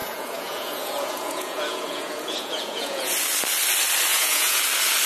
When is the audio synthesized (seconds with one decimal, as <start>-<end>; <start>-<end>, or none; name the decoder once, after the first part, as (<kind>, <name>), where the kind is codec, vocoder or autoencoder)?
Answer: 0.0-3.1 (vocoder, Vocos); 4.1-4.6